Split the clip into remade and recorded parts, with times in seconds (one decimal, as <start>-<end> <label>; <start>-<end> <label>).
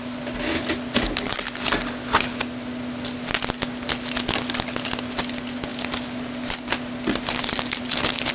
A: 0.0-8.3 recorded